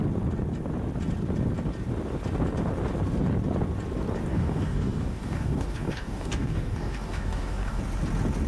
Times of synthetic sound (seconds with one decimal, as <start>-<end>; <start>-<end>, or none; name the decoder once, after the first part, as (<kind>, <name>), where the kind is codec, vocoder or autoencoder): 4.3-7.8 (codec, DAC)